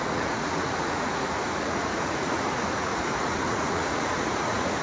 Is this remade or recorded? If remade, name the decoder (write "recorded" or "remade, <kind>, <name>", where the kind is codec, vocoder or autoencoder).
remade, vocoder, Vocos